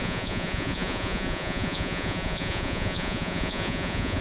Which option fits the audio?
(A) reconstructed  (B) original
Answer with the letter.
A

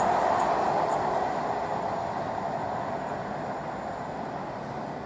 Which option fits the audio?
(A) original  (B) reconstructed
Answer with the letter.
A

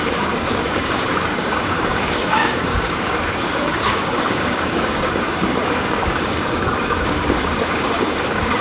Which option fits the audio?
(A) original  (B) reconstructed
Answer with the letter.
B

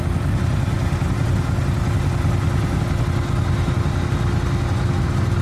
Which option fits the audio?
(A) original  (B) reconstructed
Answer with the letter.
A